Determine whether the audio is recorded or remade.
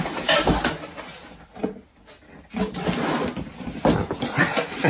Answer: recorded